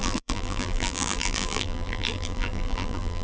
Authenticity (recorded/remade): remade